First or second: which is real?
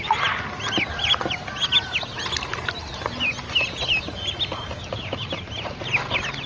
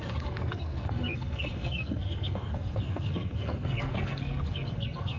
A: first